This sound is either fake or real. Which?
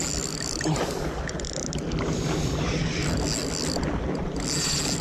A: real